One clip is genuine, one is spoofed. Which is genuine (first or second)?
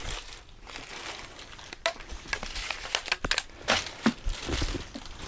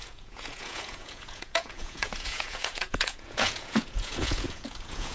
first